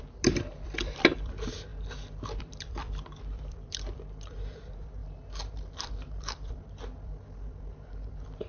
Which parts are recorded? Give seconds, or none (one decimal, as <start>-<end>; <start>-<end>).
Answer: 1.7-2.4; 5.0-5.7